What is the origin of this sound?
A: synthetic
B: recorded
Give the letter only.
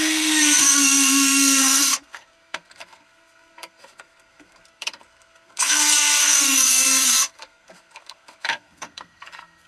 A